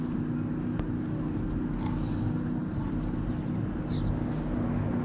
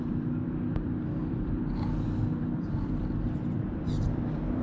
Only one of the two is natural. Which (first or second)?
first